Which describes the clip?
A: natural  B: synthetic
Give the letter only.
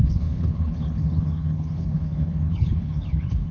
B